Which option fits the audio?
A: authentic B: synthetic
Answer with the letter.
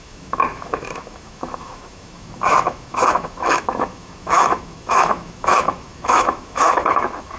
B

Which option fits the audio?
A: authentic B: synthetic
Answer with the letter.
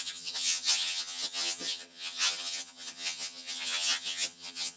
B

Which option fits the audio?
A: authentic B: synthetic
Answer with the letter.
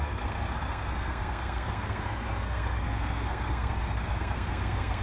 B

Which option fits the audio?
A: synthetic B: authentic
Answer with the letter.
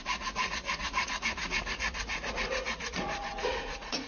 A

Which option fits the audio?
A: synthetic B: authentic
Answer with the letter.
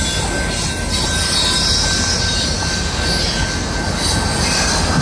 B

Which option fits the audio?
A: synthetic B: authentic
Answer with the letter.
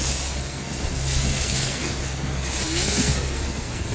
A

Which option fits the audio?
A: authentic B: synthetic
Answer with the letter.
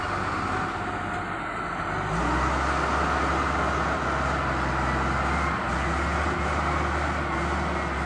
A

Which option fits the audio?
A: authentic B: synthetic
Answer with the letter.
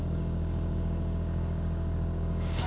B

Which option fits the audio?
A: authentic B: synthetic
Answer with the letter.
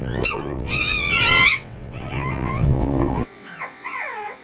B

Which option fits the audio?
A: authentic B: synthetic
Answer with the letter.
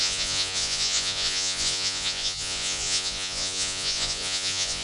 B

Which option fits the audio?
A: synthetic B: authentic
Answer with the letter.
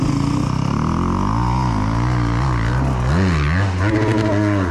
B